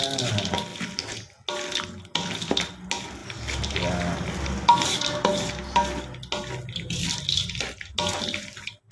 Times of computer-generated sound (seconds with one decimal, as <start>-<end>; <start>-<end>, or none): none